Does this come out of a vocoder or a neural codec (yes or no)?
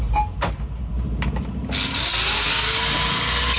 no